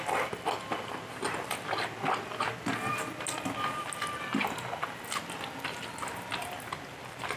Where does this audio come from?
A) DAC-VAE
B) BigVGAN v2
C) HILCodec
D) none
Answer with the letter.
D